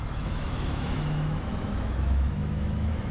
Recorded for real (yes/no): no